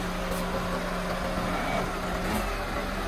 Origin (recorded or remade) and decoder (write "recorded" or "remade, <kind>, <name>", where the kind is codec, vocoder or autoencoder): recorded